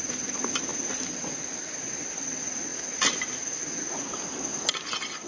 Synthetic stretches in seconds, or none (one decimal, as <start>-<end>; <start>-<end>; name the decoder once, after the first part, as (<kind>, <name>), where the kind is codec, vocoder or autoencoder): 0.7-1.4 (vocoder, BigVGAN v2)